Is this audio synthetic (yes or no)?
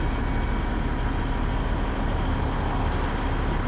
no